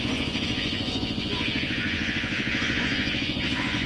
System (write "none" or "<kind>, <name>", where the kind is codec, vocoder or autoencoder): vocoder, Vocos